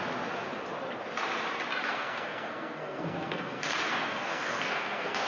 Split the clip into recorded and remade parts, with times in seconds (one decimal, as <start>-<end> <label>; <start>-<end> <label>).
0.0-1.8 recorded; 1.8-5.3 remade